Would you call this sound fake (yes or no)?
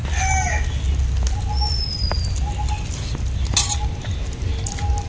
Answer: no